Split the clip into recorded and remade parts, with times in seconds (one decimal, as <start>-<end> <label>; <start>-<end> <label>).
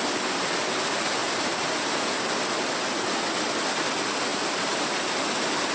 0.0-1.2 recorded; 1.2-2.0 remade; 2.0-4.3 recorded; 4.3-4.9 remade; 4.9-5.7 recorded